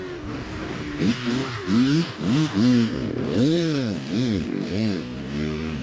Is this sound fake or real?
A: fake